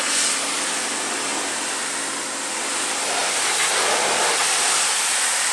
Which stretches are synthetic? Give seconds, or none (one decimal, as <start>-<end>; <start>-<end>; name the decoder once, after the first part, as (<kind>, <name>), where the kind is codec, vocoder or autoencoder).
none